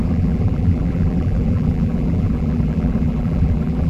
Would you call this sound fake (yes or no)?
yes